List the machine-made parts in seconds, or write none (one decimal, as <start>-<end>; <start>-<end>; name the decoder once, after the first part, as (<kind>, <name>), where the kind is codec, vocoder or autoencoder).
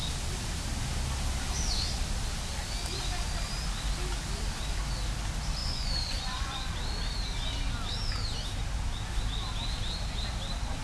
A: 5.6-6.7 (vocoder, Vocos)